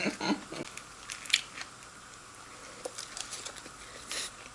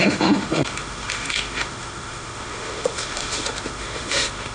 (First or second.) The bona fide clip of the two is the first